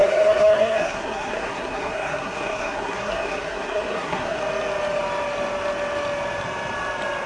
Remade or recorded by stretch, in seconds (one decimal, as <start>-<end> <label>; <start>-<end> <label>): 0.0-4.4 remade; 4.4-7.3 recorded